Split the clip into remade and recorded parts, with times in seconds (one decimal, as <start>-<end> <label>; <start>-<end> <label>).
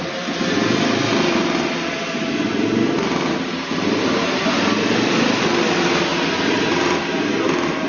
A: 0.0-7.9 recorded